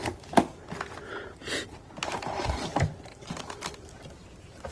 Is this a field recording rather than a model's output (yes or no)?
no